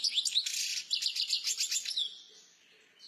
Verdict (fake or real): real